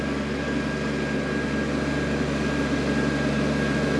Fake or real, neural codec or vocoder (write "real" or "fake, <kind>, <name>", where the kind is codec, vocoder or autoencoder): real